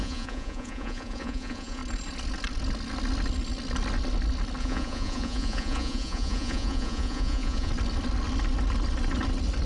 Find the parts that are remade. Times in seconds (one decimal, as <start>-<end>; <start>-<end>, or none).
0.0-1.8; 4.6-7.7